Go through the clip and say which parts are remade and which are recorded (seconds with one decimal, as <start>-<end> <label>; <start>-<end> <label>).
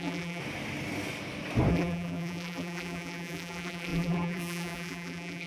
0.0-0.4 remade; 0.4-1.7 recorded; 1.7-5.5 remade